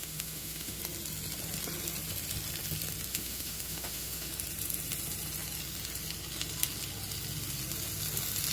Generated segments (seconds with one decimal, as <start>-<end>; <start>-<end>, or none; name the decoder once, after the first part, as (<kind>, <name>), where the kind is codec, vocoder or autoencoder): 0.0-0.8 (autoencoder, DAC-VAE); 3.1-4.3